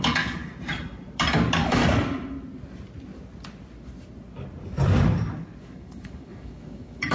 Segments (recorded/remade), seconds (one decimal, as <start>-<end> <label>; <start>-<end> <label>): 0.0-0.4 remade; 0.4-1.3 recorded; 1.3-1.8 remade; 1.8-5.6 recorded; 5.6-7.1 remade